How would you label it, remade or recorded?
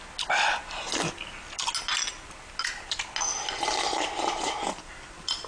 recorded